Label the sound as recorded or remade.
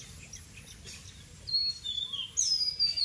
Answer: recorded